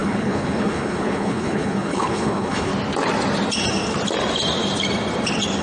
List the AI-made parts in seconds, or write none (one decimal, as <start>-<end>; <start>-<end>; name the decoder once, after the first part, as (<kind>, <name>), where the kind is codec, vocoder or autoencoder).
0.0-2.7 (codec, HILCodec)